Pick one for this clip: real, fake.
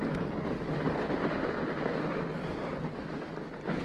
real